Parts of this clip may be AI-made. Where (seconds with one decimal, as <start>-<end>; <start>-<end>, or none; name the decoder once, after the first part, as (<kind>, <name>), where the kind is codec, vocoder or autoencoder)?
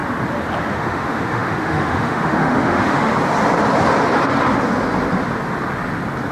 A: 0.7-3.1 (autoencoder, DAC-VAE)